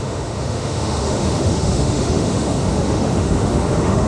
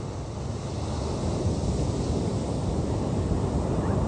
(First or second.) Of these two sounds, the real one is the second